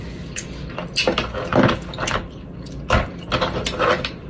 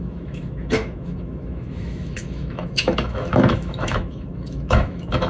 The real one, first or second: first